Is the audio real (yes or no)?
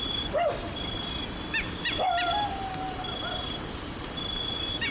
yes